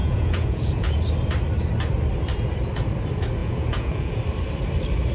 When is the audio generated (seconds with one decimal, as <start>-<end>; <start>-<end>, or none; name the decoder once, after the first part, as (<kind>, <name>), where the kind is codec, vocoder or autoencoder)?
0.0-1.0 (vocoder, Vocos); 3.4-4.2